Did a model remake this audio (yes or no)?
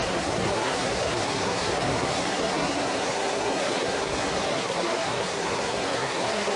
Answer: yes